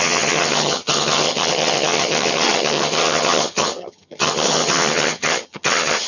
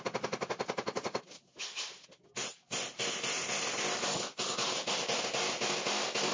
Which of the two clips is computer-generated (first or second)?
first